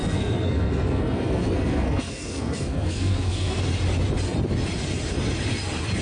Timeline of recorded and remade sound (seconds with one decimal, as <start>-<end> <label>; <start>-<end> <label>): 0.0-3.6 remade; 3.6-6.0 recorded